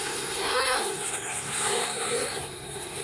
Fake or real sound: fake